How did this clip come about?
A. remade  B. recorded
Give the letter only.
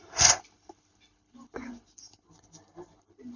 B